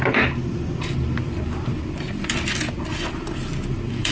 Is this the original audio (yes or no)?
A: no